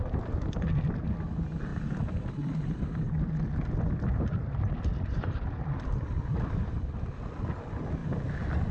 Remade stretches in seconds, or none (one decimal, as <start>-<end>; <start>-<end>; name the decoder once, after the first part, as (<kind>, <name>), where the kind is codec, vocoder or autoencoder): 1.7-6.9 (vocoder, BigVGAN v2)